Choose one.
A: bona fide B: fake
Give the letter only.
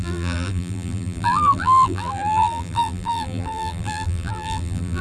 B